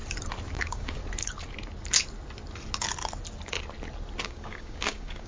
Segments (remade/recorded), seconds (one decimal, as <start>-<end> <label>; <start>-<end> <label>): 0.0-0.6 recorded; 0.6-1.0 remade; 1.0-4.2 recorded; 4.2-5.3 remade